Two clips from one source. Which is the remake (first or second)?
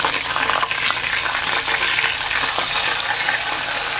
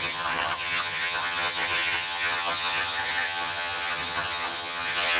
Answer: second